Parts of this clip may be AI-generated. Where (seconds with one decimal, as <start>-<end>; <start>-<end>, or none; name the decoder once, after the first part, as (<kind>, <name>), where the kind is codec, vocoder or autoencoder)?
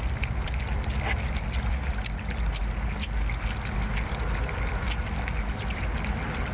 none